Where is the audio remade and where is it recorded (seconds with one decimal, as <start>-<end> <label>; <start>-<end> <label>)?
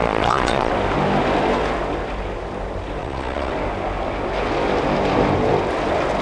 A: 0.0-0.7 remade; 0.7-3.0 recorded; 3.0-3.5 remade; 3.5-6.2 recorded